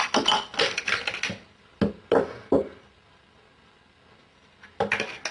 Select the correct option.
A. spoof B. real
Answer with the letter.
B